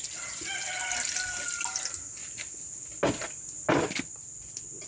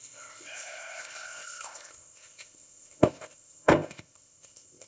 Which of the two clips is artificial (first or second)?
second